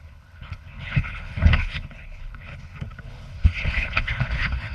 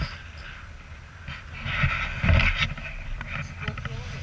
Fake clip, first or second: first